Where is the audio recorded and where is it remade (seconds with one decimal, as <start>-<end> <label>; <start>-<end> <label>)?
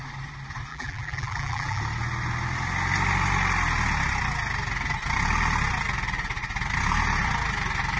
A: 0.0-0.7 recorded; 0.7-1.8 remade; 1.8-8.0 recorded